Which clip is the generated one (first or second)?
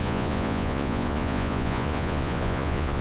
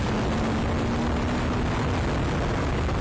first